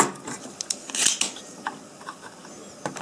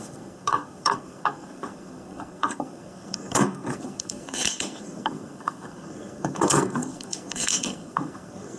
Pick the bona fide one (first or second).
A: first